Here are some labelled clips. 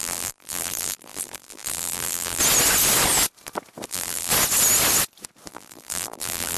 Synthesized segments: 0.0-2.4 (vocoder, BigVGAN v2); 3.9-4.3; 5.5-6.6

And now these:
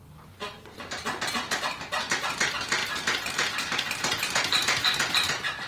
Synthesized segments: none